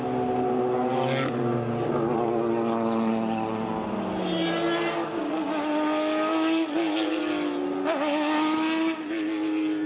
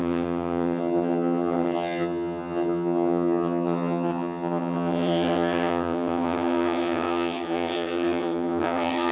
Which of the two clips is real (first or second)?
first